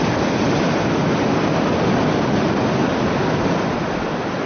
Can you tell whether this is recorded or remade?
recorded